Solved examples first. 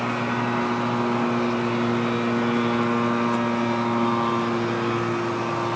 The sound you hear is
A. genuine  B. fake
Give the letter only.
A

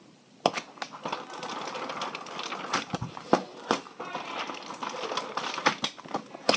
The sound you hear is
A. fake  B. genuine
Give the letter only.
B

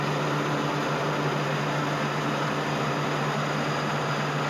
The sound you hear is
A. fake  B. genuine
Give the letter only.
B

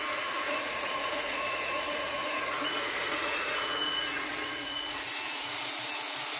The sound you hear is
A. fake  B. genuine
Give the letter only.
A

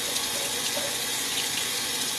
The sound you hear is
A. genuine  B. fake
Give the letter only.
B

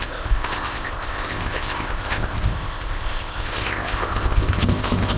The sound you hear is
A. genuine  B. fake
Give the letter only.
B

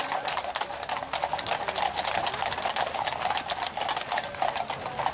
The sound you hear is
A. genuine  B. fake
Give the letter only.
A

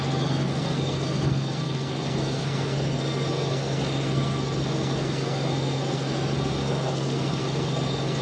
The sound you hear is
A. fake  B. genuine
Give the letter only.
A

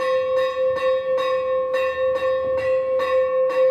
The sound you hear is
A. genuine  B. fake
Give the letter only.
A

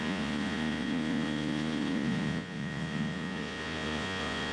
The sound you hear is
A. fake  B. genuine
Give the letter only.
A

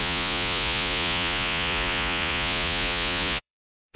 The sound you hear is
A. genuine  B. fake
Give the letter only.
B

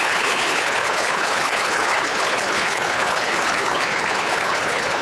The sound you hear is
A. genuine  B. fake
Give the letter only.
B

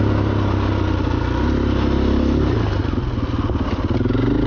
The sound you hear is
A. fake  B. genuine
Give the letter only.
B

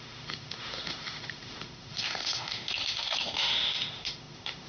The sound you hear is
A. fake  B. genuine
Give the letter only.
A